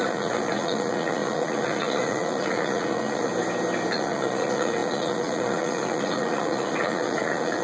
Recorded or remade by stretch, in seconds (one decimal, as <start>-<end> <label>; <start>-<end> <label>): 0.0-3.3 remade; 3.3-3.9 recorded; 3.9-7.6 remade